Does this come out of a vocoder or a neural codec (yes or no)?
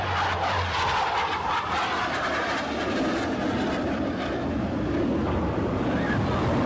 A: no